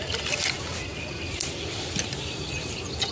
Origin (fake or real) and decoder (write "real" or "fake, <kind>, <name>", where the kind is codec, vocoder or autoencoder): real